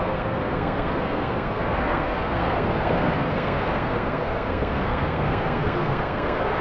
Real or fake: fake